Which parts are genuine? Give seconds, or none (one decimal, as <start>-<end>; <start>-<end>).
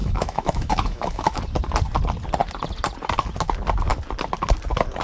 1.4-5.0